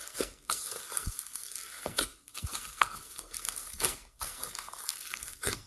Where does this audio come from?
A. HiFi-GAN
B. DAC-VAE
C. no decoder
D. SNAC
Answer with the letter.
D